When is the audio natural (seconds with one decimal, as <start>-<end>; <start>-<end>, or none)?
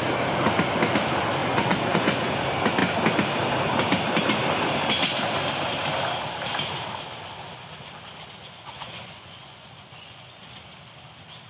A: 0.0-1.4; 2.3-8.4; 10.4-11.5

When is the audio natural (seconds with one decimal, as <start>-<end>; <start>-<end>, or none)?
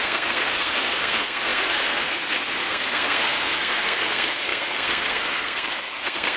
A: none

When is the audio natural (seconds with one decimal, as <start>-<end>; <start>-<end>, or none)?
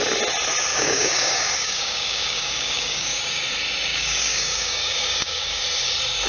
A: 0.0-0.7; 3.4-3.9; 5.6-6.3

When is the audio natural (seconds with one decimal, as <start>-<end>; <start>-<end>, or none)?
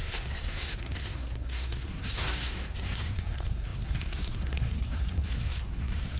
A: none